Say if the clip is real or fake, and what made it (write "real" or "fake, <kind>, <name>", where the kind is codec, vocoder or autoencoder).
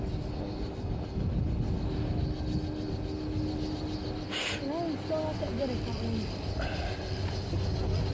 real